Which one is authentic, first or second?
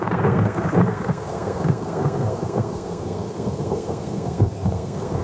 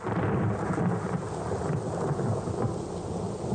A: second